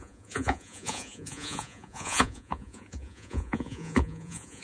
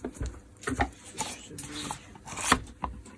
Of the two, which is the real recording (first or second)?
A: second